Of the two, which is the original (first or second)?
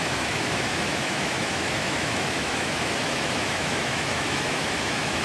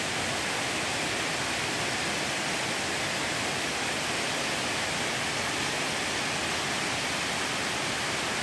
second